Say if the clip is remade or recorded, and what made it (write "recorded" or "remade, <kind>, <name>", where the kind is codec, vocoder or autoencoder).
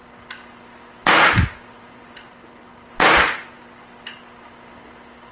recorded